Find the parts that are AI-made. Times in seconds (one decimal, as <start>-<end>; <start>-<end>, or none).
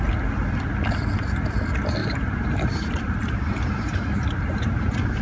2.0-5.2